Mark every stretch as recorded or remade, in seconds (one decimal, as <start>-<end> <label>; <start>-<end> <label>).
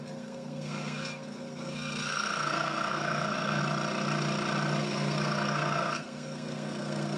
0.0-3.6 remade; 3.6-4.8 recorded; 4.8-7.2 remade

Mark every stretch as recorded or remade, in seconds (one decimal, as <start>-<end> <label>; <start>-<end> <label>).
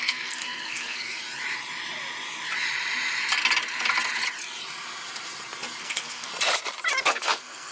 0.0-1.2 remade; 1.2-5.8 recorded; 5.8-6.3 remade; 6.3-7.0 recorded; 7.0-7.7 remade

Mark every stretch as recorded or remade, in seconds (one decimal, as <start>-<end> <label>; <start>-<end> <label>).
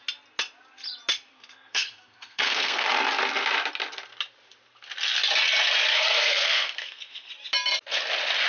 0.0-1.3 recorded; 1.3-2.9 remade; 2.9-5.9 recorded; 5.9-7.3 remade; 7.3-8.5 recorded